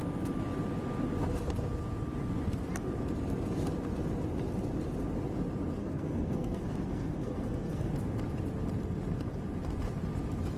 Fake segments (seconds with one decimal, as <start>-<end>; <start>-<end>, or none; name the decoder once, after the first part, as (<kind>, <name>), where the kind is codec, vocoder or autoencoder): 5.8-7.9 (codec, SNAC)